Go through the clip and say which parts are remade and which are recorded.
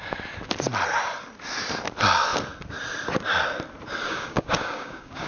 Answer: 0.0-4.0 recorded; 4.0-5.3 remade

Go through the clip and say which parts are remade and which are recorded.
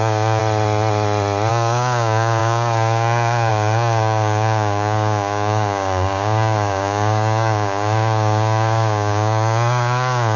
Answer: 0.0-0.4 remade; 0.4-1.5 recorded; 1.5-10.4 remade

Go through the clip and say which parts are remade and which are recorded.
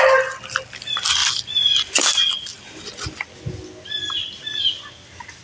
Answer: 0.0-5.4 recorded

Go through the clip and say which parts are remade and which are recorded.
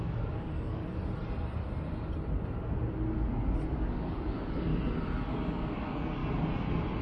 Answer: 0.0-0.8 remade; 0.8-3.9 recorded; 3.9-4.7 remade; 4.7-5.3 recorded; 5.3-6.2 remade; 6.2-7.0 recorded